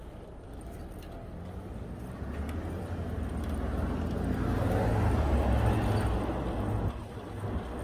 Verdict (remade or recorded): recorded